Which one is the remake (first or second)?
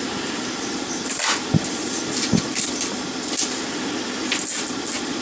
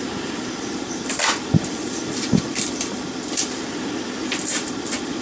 second